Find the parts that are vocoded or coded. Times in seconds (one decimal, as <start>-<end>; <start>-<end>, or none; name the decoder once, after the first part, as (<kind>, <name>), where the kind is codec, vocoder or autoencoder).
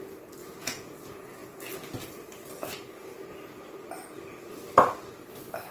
0.4-0.9 (vocoder, Vocos)